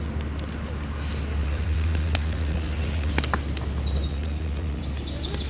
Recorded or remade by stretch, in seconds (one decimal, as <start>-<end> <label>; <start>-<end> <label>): 0.0-1.4 recorded; 1.4-3.1 remade; 3.1-4.1 recorded; 4.1-4.8 remade; 4.8-5.5 recorded